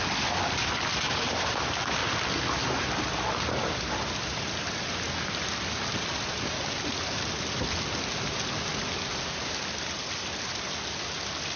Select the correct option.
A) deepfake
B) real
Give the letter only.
B